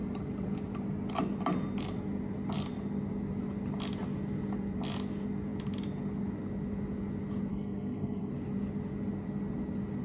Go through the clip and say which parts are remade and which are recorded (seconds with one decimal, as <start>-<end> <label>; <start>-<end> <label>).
0.0-7.5 recorded; 7.5-8.3 remade; 8.3-10.0 recorded